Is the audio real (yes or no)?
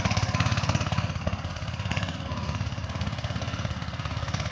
no